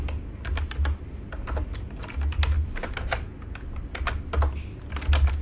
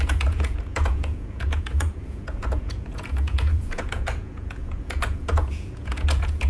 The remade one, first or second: second